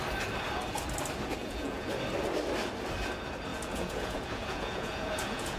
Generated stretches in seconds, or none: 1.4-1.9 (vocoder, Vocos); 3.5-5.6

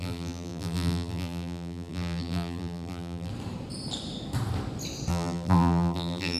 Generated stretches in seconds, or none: 0.0-3.3 (vocoder, BigVGAN v2); 5.1-6.4

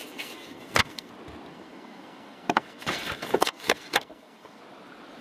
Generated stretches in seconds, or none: 0.0-1.1 (codec, SNAC); 1.5-4.6